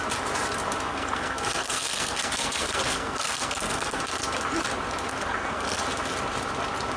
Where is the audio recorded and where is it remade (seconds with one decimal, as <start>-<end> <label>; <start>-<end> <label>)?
0.0-0.9 recorded; 0.9-4.0 remade; 4.0-5.1 recorded; 5.1-5.8 remade; 5.8-7.0 recorded

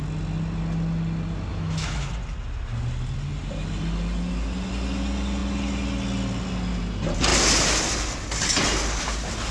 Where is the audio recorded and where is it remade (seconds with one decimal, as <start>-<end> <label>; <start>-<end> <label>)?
0.0-1.5 recorded; 1.5-2.1 remade; 2.1-9.5 recorded

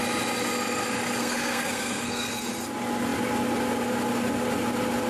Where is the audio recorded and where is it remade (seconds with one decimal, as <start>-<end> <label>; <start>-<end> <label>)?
0.0-1.2 recorded; 1.2-2.5 remade; 2.5-5.1 recorded

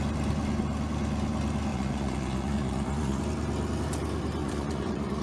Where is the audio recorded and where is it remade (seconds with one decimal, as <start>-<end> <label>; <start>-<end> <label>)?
0.0-1.7 recorded; 1.7-3.2 remade; 3.2-4.4 recorded; 4.4-5.2 remade